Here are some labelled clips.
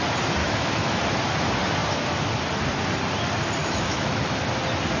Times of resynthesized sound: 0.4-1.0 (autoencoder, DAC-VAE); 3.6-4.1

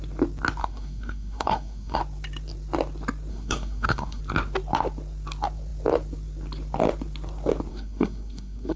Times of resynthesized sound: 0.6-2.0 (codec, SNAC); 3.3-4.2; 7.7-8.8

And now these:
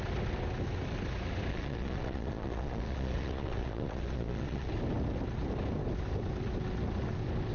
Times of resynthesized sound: 1.5-4.7 (vocoder, Vocos)